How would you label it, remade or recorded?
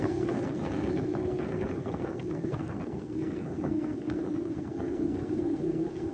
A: remade